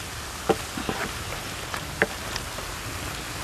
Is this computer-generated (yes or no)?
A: no